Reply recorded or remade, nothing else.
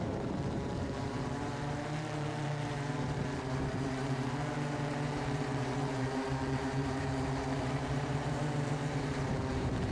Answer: remade